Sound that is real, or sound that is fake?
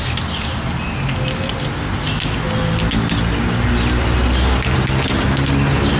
real